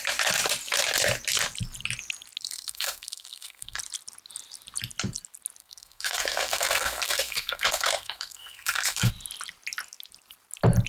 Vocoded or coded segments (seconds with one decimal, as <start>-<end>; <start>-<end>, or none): 2.4-3.8; 5.6-9.1